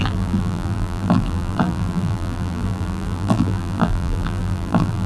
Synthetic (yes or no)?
yes